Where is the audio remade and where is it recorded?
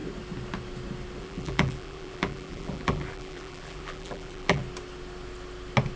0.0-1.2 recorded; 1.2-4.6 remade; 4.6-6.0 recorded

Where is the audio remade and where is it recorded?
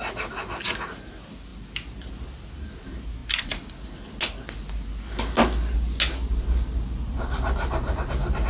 0.0-3.2 recorded; 3.2-3.7 remade; 3.7-6.3 recorded; 6.3-8.1 remade; 8.1-8.5 recorded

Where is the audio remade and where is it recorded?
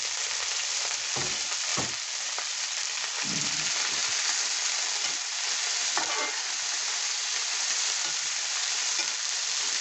0.0-4.0 remade; 4.0-8.4 recorded; 8.4-9.8 remade